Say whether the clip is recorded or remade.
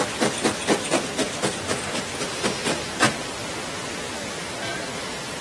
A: recorded